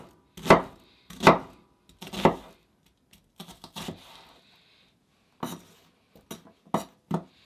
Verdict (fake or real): real